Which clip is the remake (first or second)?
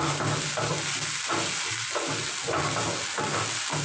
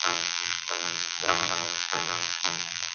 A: second